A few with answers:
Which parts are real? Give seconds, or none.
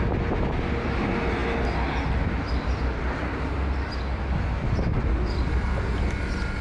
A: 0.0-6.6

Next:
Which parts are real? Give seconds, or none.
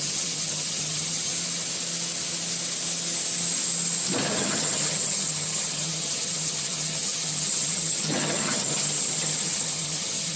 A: 1.3-4.4